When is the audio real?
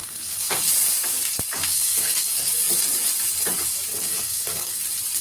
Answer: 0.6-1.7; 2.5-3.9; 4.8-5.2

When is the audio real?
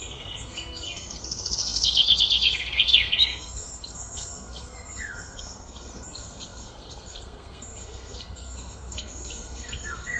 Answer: none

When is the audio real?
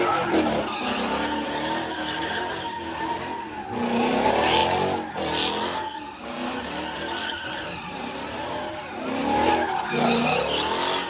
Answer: 0.0-11.1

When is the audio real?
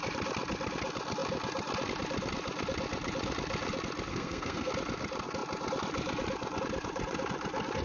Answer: 0.0-4.1; 4.7-7.8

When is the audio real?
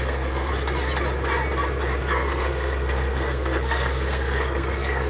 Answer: 0.5-2.0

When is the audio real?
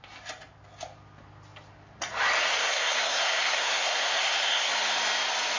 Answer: 0.0-2.6; 4.7-5.6